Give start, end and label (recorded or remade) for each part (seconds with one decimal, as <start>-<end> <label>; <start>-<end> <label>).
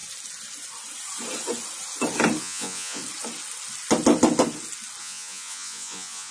0.0-2.4 recorded; 2.4-3.0 remade; 3.0-5.0 recorded; 5.0-6.3 remade